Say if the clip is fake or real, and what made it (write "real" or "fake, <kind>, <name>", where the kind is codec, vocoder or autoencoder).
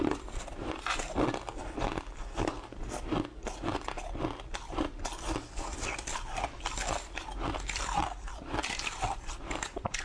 fake, vocoder, BigVGAN v2